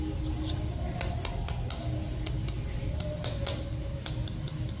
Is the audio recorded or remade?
recorded